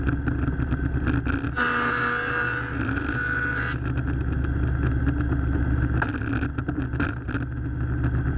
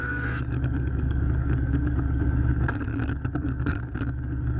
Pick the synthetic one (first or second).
second